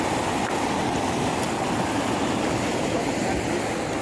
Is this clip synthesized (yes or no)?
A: no